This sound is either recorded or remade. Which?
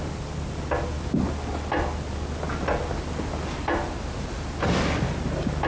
recorded